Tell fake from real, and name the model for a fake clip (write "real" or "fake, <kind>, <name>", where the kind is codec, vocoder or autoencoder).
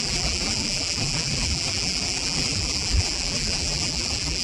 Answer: fake, vocoder, BigVGAN v2